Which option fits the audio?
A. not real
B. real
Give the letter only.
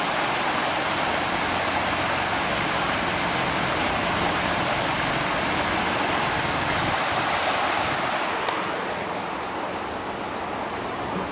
B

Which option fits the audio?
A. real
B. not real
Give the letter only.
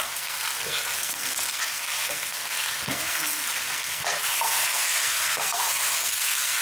B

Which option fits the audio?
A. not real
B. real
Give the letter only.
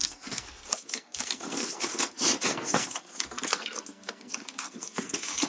A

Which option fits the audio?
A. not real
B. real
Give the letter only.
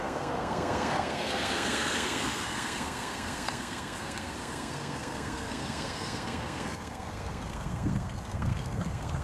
A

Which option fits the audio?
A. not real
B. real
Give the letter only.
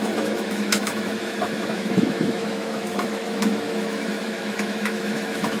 A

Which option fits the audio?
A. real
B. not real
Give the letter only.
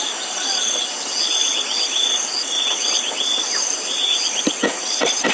A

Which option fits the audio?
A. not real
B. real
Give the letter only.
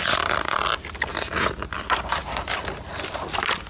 B